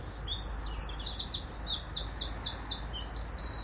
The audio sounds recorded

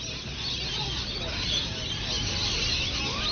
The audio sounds recorded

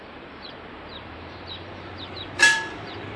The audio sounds remade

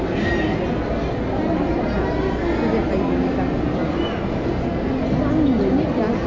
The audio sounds recorded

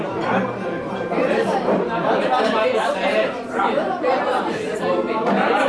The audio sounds remade